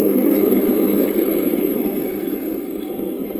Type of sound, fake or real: fake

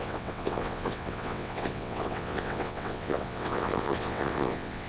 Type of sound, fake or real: fake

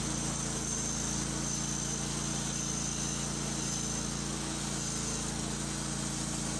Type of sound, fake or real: real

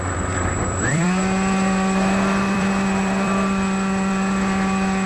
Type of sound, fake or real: fake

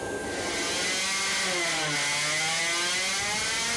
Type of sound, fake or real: real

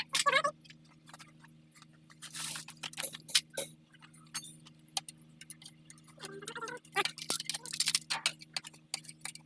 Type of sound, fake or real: real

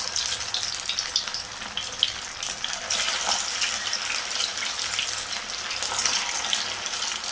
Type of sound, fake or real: real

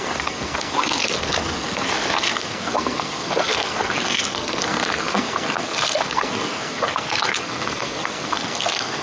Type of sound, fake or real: fake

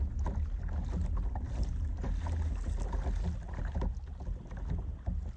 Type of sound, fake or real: real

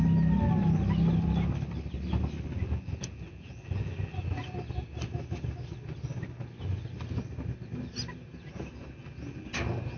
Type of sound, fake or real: real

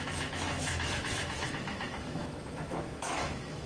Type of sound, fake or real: fake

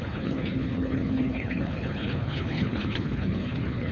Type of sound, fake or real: fake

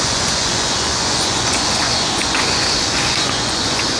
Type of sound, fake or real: fake